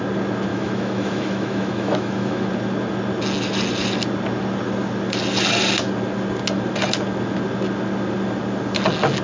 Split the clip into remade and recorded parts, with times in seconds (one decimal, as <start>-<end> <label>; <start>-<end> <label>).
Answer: 0.0-0.5 recorded; 0.5-2.5 remade; 2.5-9.2 recorded